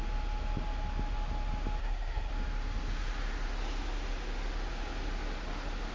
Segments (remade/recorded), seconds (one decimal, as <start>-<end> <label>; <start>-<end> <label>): 0.0-1.8 recorded; 1.8-2.3 remade; 2.3-5.9 recorded